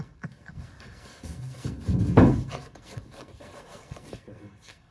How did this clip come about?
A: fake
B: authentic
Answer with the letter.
A